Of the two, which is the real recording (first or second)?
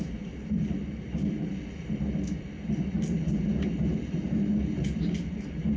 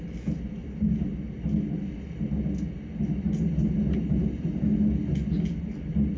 second